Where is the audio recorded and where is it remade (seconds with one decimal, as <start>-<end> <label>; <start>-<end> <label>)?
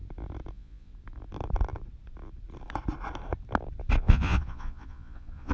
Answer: 0.0-0.5 recorded; 0.5-0.9 remade; 0.9-4.0 recorded; 4.0-5.5 remade